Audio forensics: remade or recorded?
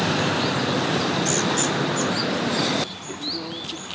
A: recorded